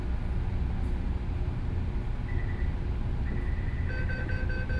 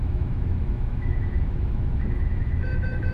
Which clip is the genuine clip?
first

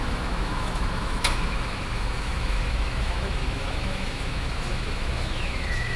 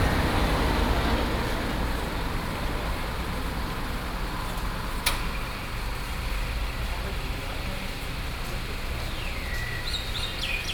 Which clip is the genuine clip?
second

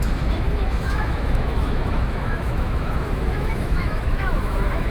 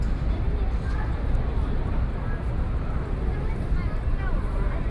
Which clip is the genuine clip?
second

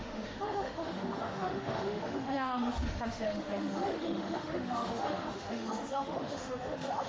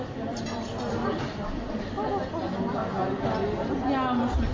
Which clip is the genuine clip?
second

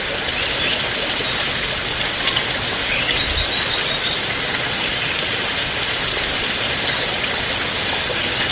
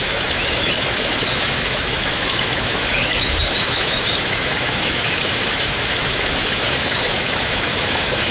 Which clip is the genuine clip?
first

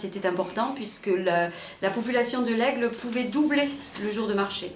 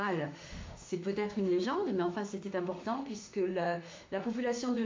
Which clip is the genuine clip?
first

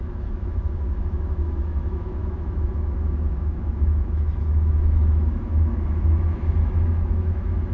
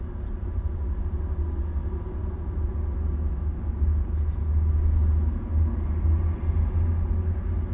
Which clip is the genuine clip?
second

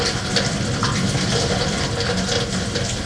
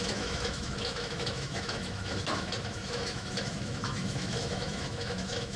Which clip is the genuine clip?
first